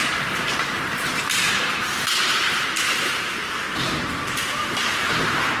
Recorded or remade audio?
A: remade